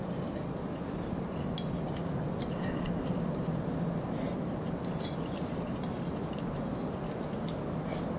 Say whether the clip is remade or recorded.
recorded